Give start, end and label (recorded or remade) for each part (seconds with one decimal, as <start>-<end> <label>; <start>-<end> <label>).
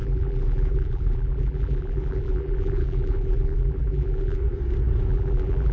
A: 0.0-4.4 remade; 4.4-5.1 recorded; 5.1-5.7 remade